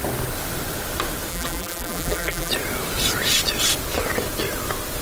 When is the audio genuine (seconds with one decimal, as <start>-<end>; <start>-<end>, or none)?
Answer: 0.0-1.3; 2.5-5.0